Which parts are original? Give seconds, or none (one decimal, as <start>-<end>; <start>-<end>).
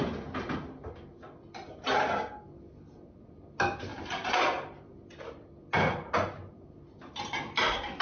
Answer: 0.0-8.0